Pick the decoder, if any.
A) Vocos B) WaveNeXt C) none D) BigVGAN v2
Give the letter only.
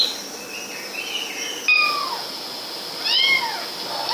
C